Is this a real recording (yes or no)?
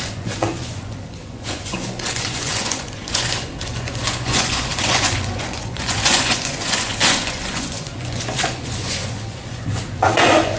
no